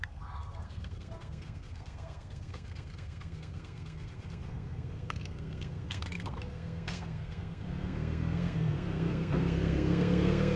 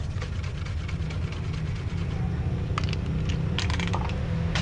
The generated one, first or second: first